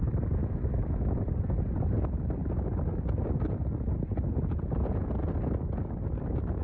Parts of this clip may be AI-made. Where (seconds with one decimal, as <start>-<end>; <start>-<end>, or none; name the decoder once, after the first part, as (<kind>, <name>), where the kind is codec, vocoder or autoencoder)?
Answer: 0.4-1.1 (autoencoder, DAC-VAE)